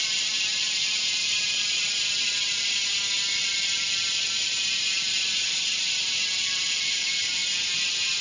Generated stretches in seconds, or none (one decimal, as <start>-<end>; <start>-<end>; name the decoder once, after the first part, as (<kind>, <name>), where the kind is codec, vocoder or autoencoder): 0.0-2.8 (vocoder, BigVGAN v2); 3.4-7.4